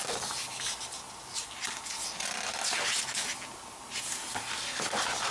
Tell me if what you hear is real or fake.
real